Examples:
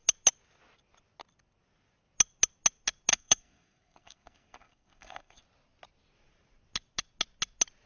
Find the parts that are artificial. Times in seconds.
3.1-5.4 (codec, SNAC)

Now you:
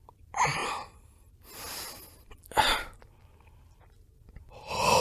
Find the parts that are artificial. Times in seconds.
none

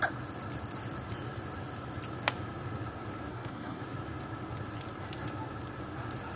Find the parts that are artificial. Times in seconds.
3.3-3.8 (codec, SNAC)